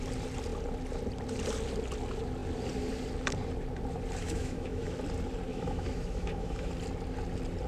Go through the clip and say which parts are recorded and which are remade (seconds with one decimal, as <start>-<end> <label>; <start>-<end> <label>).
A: 0.0-4.2 recorded; 4.2-4.9 remade; 4.9-5.5 recorded; 5.5-6.7 remade; 6.7-7.7 recorded